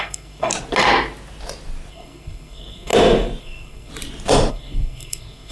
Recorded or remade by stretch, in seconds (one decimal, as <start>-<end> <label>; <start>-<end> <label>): 0.0-0.5 remade; 0.5-1.9 recorded; 1.9-2.9 remade; 2.9-3.4 recorded; 3.4-3.9 remade; 3.9-4.5 recorded; 4.5-5.5 remade